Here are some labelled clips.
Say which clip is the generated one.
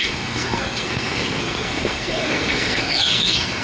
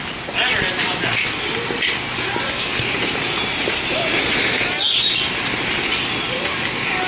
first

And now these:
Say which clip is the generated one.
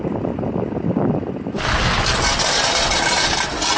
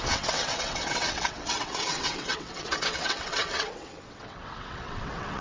second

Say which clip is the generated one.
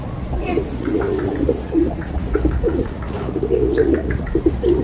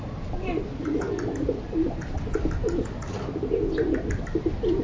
first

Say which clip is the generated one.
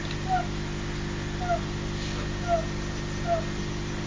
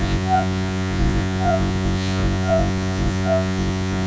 second